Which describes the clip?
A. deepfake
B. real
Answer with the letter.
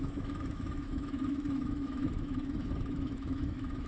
A